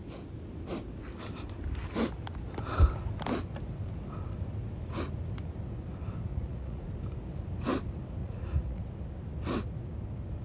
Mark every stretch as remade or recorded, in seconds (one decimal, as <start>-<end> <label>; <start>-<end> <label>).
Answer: 0.0-6.3 recorded; 6.3-6.9 remade; 6.9-8.2 recorded; 8.2-8.9 remade; 8.9-10.4 recorded